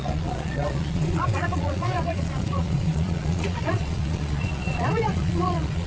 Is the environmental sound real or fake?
fake